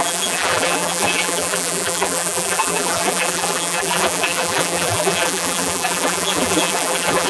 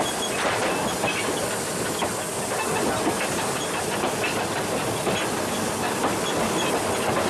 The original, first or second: second